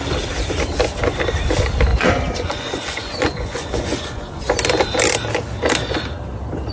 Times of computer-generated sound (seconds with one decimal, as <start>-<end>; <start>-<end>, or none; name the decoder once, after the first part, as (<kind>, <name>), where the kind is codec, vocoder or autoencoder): 1.9-4.4 (vocoder, Vocos)